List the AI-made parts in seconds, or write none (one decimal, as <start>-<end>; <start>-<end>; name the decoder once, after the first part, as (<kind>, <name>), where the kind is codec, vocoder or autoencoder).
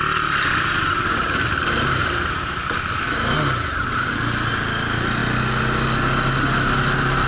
none